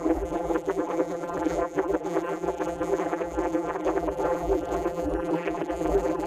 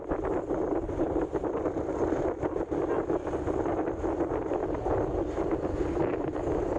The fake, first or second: first